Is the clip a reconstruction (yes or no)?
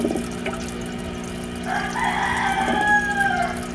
no